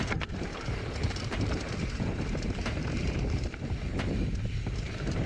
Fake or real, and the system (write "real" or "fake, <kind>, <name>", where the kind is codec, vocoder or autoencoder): fake, vocoder, BigVGAN v2